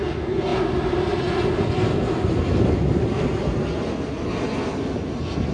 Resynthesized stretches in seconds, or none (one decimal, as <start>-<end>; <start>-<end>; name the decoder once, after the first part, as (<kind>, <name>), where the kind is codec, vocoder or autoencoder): none